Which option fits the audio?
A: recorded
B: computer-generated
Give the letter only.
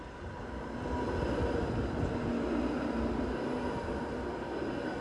A